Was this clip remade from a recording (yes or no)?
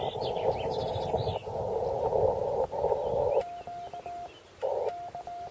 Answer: no